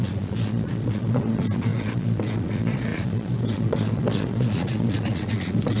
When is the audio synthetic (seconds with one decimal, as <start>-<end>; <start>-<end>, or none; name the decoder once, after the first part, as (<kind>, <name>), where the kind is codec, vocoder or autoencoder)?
0.0-5.8 (vocoder, Vocos)